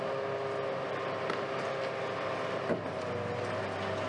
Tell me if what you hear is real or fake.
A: real